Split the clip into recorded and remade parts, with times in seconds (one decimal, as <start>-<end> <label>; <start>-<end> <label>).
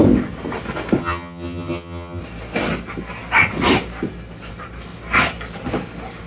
0.0-1.0 recorded; 1.0-2.2 remade; 2.2-6.3 recorded